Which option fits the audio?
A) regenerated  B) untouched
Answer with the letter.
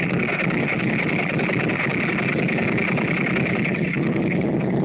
B